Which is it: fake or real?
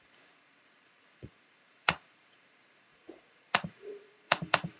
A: fake